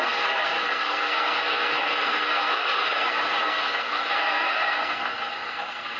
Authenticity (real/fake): fake